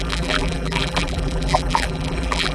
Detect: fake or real fake